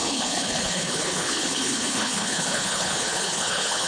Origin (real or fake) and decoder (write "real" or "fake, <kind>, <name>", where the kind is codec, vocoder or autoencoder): fake, codec, HILCodec